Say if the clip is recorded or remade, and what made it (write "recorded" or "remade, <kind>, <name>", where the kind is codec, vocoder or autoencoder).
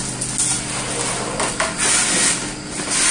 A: recorded